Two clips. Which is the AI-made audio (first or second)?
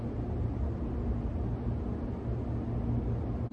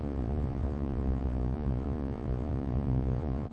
second